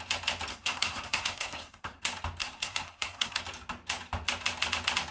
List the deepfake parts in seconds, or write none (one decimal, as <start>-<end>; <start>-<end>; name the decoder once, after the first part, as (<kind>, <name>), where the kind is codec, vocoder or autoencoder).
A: 0.5-2.0 (codec, SNAC); 2.4-3.4